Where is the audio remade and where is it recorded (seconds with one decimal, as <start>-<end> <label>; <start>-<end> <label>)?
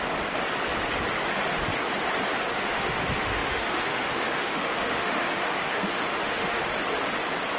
0.0-2.5 recorded; 2.5-6.6 remade; 6.6-7.6 recorded